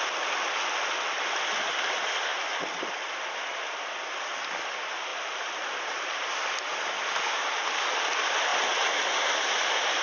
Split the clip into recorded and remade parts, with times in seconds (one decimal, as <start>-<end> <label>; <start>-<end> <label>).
0.0-10.0 recorded